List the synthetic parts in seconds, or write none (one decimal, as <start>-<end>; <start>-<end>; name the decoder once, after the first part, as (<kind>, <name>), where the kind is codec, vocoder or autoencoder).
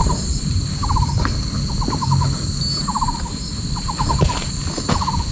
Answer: 0.0-1.4 (vocoder, BigVGAN v2); 2.9-4.5